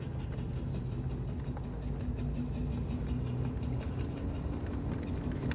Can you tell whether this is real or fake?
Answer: real